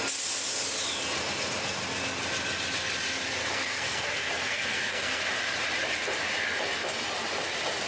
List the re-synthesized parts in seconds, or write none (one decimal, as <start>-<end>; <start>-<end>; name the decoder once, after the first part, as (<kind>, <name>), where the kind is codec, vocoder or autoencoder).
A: 3.4-5.2 (codec, SNAC)

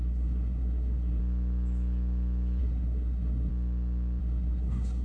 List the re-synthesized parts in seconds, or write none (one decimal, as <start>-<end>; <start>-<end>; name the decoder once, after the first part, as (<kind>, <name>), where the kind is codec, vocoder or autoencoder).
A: 0.0-1.2 (codec, SNAC); 2.6-3.5; 4.2-5.0

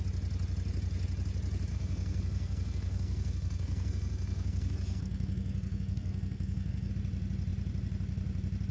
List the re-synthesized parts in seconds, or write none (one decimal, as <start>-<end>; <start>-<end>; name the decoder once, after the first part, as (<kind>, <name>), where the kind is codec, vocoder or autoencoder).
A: 1.7-6.9 (codec, SNAC)

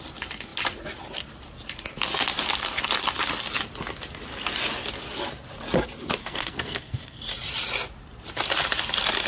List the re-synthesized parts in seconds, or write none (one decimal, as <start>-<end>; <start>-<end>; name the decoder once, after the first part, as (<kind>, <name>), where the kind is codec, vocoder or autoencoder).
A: 6.2-7.2 (codec, SNAC)